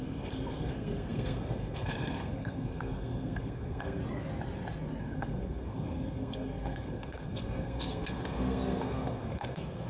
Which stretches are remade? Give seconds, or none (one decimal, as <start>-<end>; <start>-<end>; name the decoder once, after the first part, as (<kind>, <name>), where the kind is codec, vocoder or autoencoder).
0.0-4.0 (codec, SNAC); 5.0-9.9